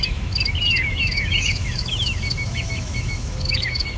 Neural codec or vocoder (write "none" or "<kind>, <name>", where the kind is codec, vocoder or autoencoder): autoencoder, DAC-VAE